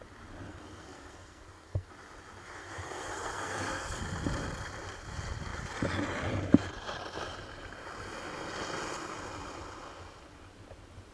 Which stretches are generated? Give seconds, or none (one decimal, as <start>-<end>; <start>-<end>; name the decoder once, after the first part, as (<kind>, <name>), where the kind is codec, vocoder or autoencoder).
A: 0.5-1.9 (codec, SNAC); 2.4-4.0